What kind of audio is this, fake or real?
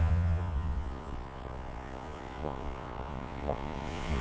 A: fake